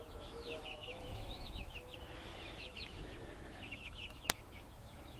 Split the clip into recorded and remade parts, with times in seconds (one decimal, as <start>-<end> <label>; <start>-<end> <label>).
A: 0.0-5.2 remade